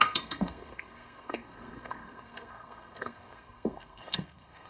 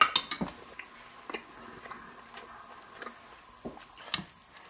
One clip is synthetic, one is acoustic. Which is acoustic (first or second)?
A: second